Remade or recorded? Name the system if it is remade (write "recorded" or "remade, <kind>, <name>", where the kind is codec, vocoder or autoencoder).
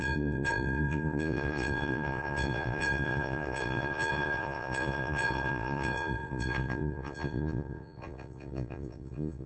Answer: remade, vocoder, Vocos